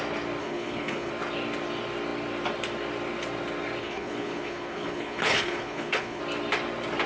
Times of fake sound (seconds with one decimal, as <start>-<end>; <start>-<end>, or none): 0.4-1.1; 3.8-6.2